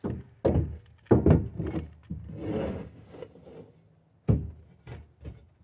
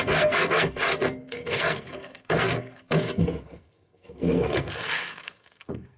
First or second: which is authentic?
first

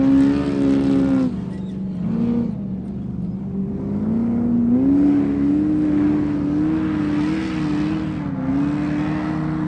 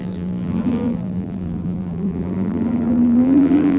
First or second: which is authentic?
first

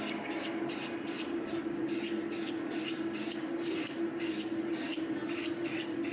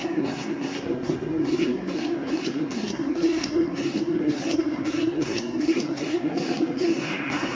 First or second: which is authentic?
first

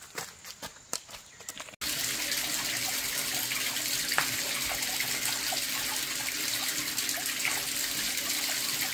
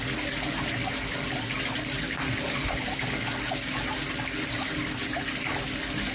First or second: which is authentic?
first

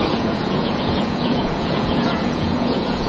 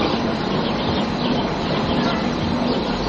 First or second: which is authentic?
second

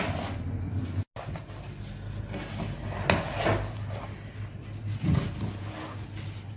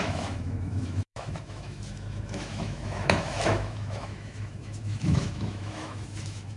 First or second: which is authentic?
first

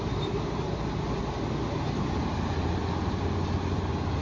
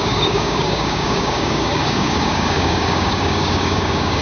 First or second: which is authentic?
first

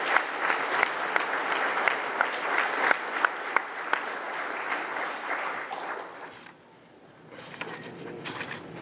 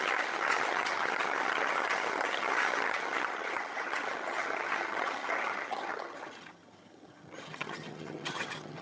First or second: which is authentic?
first